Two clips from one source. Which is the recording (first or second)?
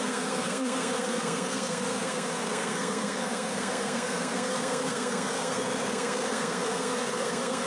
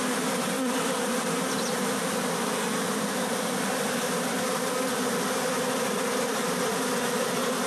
second